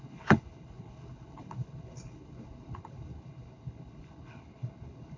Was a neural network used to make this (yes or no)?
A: yes